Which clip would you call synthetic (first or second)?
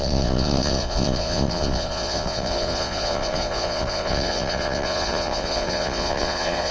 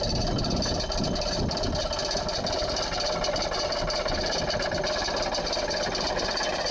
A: first